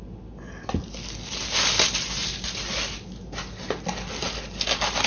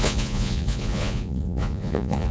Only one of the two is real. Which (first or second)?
first